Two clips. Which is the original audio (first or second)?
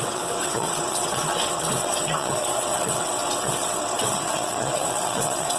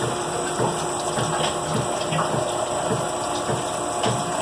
second